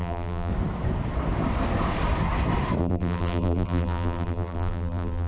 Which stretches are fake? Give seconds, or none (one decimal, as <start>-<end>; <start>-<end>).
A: 0.0-0.5; 2.8-5.3